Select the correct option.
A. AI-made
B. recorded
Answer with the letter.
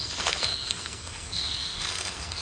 A